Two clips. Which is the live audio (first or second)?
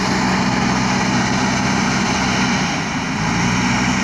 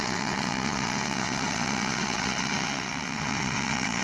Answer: first